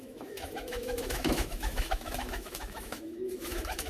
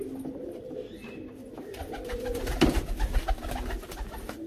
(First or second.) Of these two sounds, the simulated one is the first